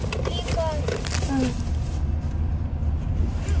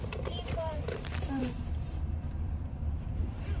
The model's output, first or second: second